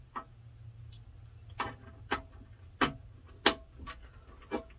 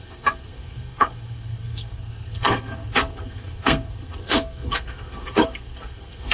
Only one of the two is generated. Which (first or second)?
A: second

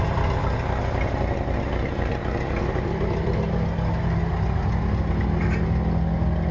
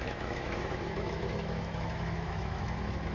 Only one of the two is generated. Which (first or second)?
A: second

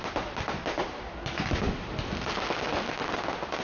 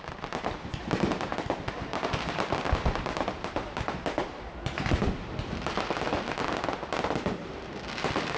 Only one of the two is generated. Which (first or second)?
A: second